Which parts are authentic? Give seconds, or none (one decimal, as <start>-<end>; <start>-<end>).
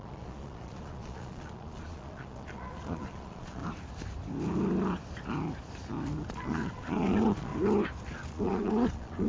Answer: 3.6-6.3; 7.5-8.3